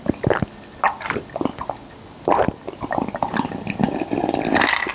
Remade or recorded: recorded